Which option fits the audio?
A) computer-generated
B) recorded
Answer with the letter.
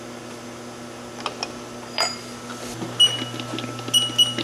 B